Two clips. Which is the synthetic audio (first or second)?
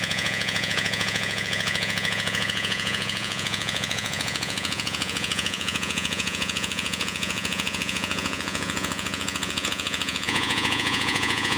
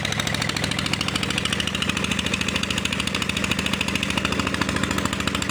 first